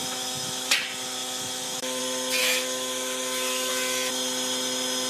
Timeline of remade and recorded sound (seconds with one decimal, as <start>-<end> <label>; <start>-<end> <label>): 0.0-0.7 remade; 0.7-1.2 recorded; 1.2-2.0 remade; 2.0-2.4 recorded; 2.4-3.7 remade; 3.7-5.1 recorded